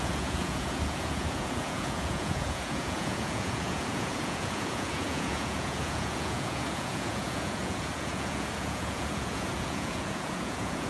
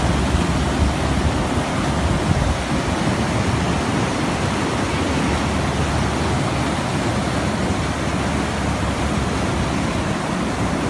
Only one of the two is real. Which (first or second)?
second